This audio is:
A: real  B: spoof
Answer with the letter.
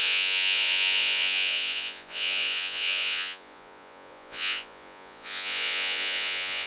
B